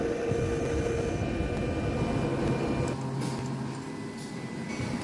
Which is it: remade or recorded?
recorded